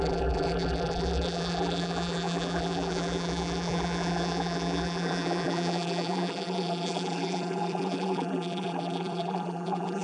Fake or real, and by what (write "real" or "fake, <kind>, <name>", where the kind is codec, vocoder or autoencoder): fake, vocoder, BigVGAN v2